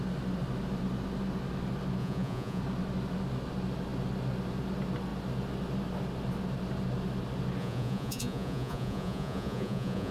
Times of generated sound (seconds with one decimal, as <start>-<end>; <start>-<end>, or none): 2.0-2.6; 7.6-10.1